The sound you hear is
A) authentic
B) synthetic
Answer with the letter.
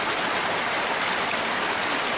A